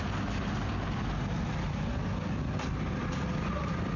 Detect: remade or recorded recorded